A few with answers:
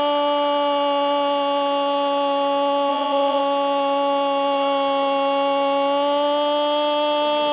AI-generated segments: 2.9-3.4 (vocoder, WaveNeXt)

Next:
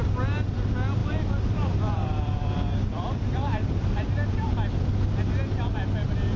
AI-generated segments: 1.0-4.8 (vocoder, BigVGAN v2)

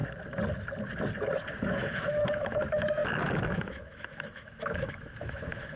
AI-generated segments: 1.5-5.8 (autoencoder, DAC-VAE)

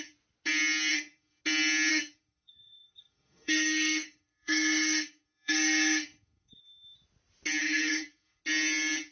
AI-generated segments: 0.9-1.4 (codec, SNAC); 1.9-6.6; 7.6-8.4

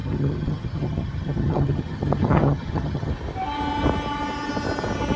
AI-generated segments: 0.0-3.1 (vocoder, HiFi-GAN)

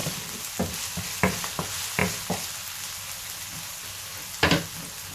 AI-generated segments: none

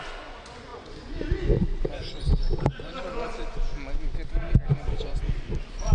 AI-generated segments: 0.0-3.7 (vocoder, Vocos); 4.9-5.9